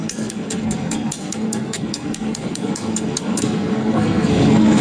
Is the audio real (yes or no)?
no